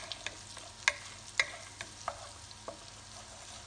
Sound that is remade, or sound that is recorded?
recorded